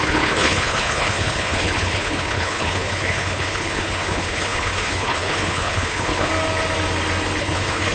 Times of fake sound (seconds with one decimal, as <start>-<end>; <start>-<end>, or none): 0.0-6.3; 7.4-7.9